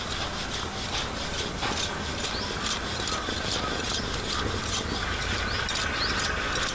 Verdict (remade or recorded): recorded